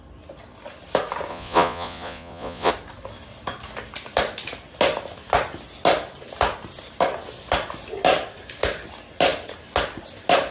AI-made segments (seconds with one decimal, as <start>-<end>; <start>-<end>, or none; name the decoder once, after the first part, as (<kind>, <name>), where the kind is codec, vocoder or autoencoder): 1.3-2.7 (vocoder, Vocos)